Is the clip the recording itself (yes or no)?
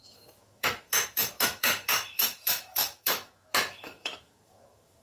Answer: no